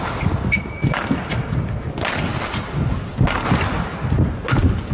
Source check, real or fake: real